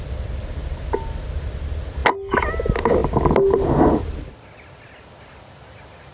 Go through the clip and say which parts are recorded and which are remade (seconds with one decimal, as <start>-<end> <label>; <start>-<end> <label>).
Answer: 0.0-6.1 recorded